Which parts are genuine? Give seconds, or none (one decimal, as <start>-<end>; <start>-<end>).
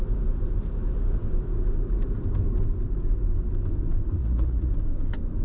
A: 0.0-4.2; 4.7-5.4